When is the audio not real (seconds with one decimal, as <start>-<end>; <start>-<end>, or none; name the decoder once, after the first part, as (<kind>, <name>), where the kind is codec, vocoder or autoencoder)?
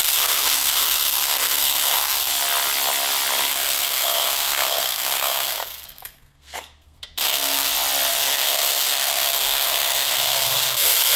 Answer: 0.0-2.3 (codec, SNAC); 3.5-7.7; 8.1-11.2